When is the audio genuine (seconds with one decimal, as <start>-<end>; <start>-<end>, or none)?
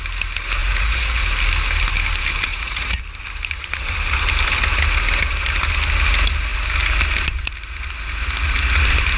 0.0-0.6; 1.2-2.5; 3.0-9.2